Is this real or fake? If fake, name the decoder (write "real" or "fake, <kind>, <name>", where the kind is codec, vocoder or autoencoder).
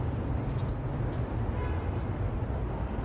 real